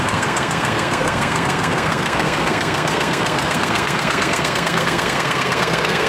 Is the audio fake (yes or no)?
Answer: yes